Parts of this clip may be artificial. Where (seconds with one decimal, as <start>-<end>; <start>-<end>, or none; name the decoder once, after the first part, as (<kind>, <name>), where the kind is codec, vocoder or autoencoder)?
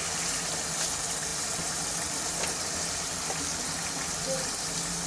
none